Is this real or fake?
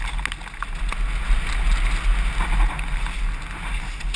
real